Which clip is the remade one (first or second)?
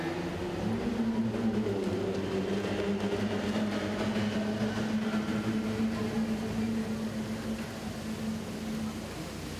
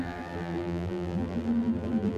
second